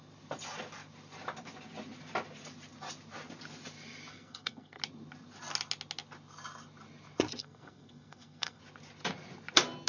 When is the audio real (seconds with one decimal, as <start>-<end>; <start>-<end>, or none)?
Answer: 0.0-4.1; 4.8-7.4; 8.6-9.9